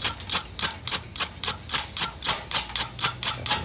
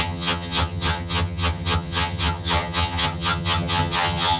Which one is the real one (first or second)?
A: first